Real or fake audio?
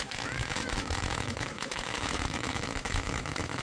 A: fake